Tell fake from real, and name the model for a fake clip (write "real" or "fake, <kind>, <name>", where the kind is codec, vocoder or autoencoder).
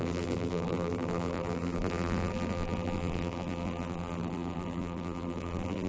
fake, vocoder, BigVGAN v2